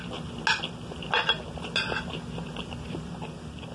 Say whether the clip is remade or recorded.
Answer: recorded